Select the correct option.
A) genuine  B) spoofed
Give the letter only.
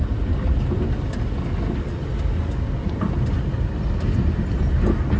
A